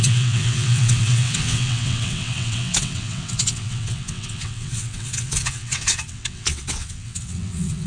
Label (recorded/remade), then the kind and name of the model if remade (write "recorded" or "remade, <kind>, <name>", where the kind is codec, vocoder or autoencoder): remade, vocoder, WaveNeXt